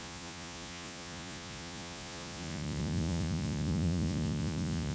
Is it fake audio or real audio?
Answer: fake